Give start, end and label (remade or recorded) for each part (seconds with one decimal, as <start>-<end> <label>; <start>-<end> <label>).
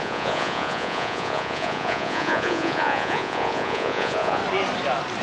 0.0-4.4 remade; 4.4-5.2 recorded